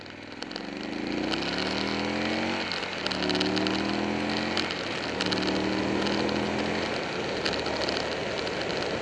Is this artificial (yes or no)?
no